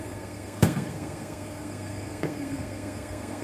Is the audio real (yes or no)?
no